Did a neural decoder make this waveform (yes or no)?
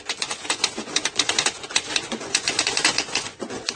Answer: yes